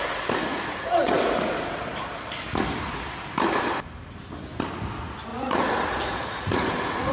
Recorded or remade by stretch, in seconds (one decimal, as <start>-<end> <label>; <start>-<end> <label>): 0.0-0.5 recorded; 0.5-1.8 remade; 1.8-5.3 recorded; 5.3-7.1 remade